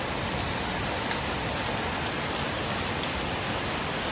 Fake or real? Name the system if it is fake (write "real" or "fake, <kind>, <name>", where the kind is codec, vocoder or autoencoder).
real